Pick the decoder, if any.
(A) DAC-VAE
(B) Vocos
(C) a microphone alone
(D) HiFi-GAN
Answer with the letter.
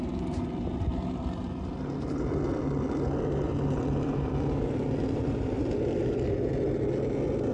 C